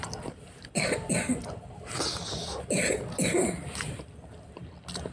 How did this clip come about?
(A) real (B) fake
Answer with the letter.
A